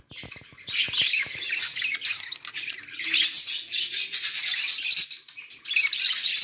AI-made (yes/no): no